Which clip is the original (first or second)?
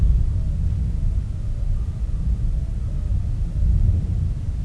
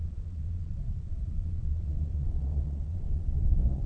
first